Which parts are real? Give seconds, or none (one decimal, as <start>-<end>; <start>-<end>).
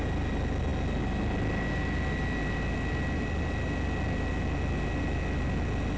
0.0-6.0